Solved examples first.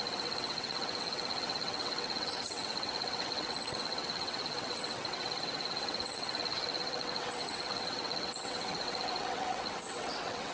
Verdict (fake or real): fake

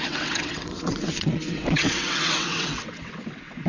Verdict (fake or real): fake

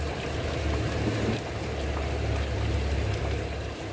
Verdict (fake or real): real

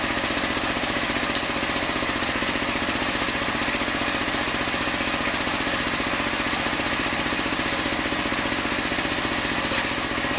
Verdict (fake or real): real